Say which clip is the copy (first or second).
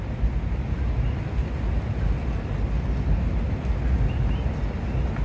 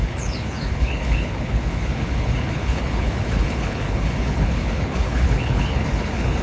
second